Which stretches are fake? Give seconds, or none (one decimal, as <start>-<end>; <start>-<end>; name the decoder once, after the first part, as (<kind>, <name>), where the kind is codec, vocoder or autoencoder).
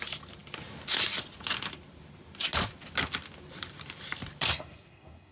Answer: 4.5-5.3 (codec, SNAC)